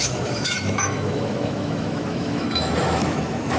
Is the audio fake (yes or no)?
yes